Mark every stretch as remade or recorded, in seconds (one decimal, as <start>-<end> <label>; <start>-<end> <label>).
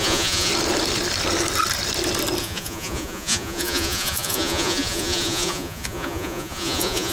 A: 0.0-0.5 remade; 0.5-2.4 recorded; 2.4-7.1 remade